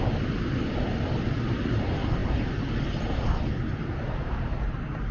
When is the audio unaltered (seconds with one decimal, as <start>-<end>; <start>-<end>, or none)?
0.0-5.1

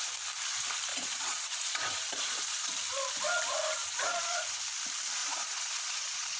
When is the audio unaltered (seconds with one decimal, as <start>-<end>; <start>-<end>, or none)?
0.0-0.9; 2.7-3.8; 4.6-5.2